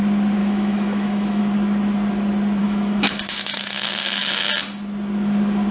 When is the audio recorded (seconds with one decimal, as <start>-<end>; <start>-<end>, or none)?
0.0-0.4; 1.4-2.6; 4.4-5.7